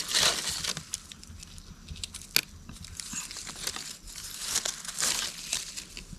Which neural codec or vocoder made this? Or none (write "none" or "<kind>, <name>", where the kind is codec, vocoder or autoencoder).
none